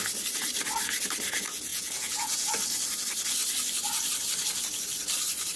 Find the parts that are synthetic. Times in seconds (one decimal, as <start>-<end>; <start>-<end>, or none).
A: 1.7-2.5